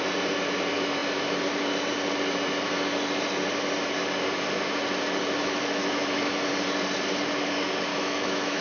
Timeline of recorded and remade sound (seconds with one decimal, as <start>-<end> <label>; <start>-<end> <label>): 0.0-5.4 recorded; 5.4-6.5 remade; 6.5-7.9 recorded; 7.9-8.6 remade